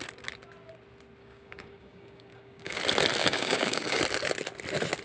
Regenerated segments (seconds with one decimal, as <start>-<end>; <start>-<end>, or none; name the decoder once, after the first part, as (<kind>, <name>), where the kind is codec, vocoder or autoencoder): 1.2-2.8 (codec, DAC); 3.2-4.0